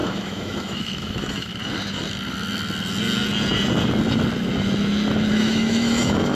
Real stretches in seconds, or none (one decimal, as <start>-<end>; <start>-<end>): 1.5-5.3